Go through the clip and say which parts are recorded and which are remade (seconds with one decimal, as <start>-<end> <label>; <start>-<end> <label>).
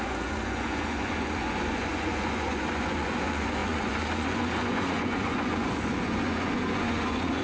0.0-7.4 remade